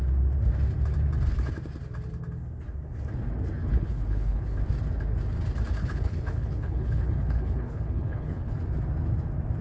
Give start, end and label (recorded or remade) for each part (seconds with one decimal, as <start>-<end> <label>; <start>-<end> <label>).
0.0-3.7 recorded; 3.7-4.4 remade; 4.4-5.8 recorded; 5.8-8.6 remade; 8.6-9.6 recorded